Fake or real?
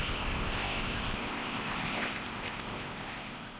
fake